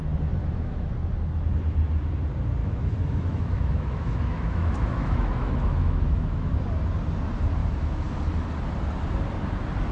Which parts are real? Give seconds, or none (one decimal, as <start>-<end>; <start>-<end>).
0.0-0.4; 0.9-2.6; 6.5-7.6; 8.1-9.9